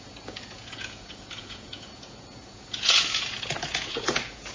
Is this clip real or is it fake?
fake